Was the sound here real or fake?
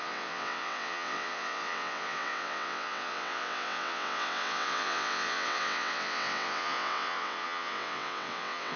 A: fake